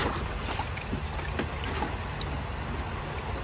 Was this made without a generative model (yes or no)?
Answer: yes